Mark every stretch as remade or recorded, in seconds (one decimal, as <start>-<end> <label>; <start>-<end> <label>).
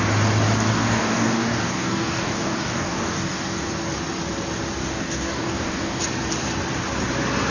0.0-0.8 recorded; 0.8-3.7 remade; 3.7-4.8 recorded; 4.8-6.0 remade; 6.0-7.5 recorded